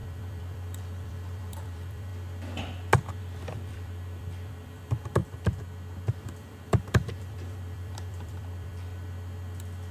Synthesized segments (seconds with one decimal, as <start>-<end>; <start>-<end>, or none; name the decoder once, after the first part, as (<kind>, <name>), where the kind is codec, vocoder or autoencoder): 0.0-2.1 (vocoder, BigVGAN v2); 3.2-5.2; 6.1-8.9

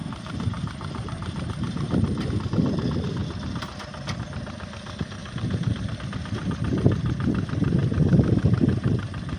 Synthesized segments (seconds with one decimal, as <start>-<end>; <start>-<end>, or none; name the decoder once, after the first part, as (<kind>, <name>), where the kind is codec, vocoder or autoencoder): 0.0-2.3 (vocoder, BigVGAN v2); 5.2-6.0

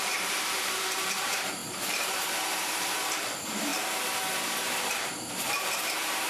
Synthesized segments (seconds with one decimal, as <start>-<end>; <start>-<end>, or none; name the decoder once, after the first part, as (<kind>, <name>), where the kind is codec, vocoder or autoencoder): 0.0-3.7 (vocoder, BigVGAN v2); 4.3-6.3

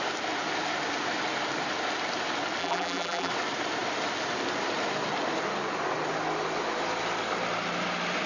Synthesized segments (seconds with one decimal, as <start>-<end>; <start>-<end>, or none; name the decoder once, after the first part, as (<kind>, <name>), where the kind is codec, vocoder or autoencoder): 2.6-3.3 (vocoder, BigVGAN v2)